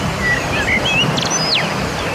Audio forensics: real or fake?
real